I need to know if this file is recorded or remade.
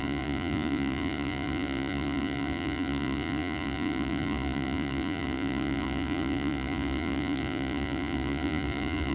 remade